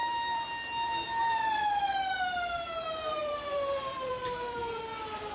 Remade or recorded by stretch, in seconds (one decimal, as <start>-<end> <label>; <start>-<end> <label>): 0.0-2.2 remade; 2.2-3.2 recorded; 3.2-4.8 remade; 4.8-5.3 recorded